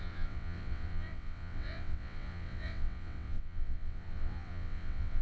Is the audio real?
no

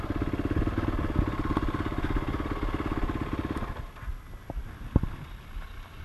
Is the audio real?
yes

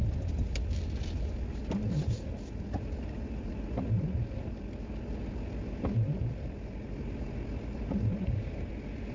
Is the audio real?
yes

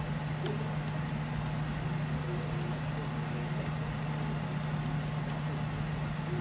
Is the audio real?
yes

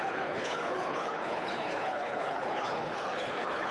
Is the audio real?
no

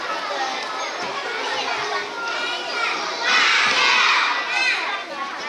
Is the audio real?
yes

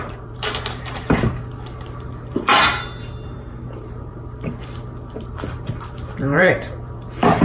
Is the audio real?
no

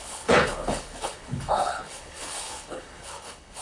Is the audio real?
no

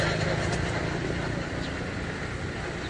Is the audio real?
yes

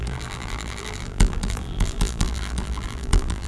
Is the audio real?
no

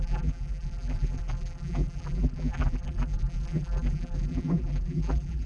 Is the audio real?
no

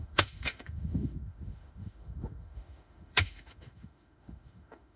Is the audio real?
no